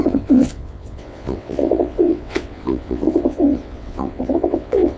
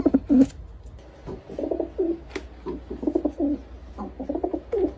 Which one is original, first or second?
second